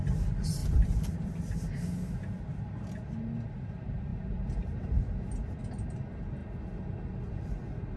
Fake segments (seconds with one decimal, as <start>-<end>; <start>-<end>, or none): 0.6-1.5; 4.1-5.6